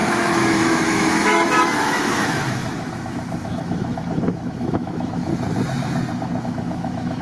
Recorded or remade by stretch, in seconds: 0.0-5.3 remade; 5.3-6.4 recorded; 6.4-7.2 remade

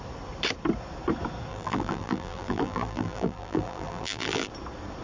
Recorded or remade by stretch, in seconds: 0.0-1.5 recorded; 1.5-4.5 remade; 4.5-5.0 recorded